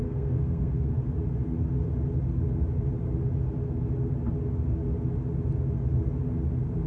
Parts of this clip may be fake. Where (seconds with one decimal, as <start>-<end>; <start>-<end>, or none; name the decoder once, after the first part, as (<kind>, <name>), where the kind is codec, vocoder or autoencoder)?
0.0-0.9 (codec, SNAC)